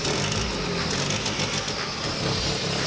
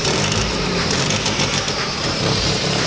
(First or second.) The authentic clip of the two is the first